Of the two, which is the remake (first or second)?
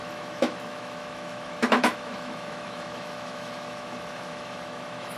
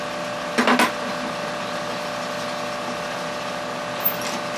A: first